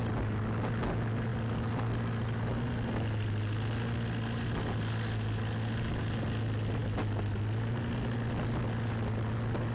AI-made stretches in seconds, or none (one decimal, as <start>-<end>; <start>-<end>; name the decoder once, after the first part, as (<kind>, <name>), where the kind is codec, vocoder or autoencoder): none